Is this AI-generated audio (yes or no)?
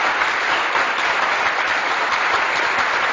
yes